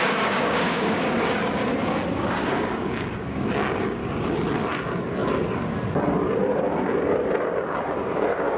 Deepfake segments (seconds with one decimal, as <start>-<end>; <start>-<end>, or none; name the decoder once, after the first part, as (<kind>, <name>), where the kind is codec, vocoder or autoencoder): 0.0-1.4 (codec, DAC); 2.1-4.0; 8.1-8.6